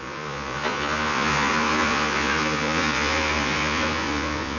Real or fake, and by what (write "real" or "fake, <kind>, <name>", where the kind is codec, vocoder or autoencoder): fake, vocoder, Vocos